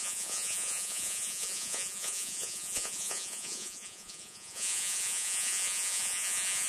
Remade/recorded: remade